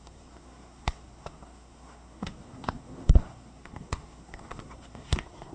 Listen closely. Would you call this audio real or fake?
fake